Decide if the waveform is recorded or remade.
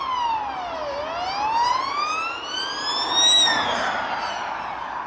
recorded